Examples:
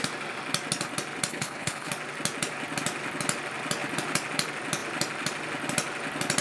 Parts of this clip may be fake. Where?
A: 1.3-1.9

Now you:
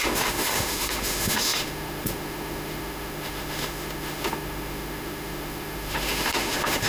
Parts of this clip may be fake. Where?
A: 0.0-6.9